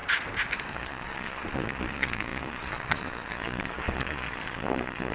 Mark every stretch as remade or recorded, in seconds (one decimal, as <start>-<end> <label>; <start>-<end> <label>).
0.0-0.7 recorded; 0.7-5.1 remade